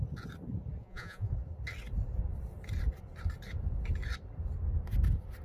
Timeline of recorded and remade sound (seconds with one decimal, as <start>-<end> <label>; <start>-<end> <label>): 0.0-0.8 recorded; 0.8-1.3 remade; 1.3-5.4 recorded